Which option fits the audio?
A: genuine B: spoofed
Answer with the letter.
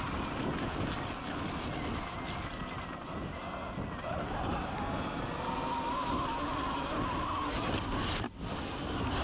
A